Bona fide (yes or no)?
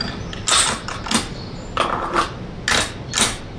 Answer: yes